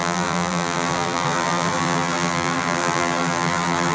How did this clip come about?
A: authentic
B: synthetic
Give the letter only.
B